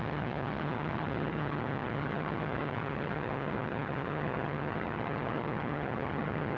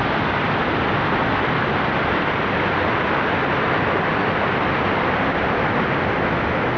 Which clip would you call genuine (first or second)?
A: second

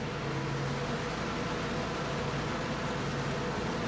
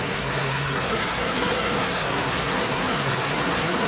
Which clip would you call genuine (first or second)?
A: first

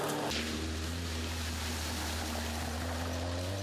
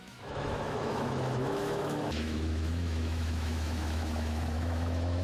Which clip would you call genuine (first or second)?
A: first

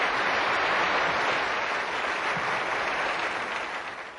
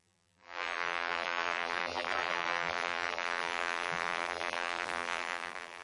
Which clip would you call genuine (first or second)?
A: first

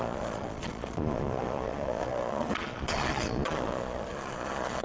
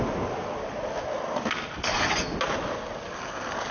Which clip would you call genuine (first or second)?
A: second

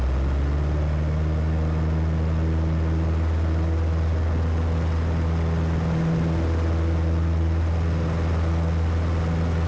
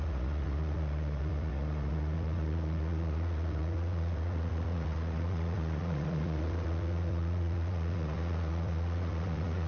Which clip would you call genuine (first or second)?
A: first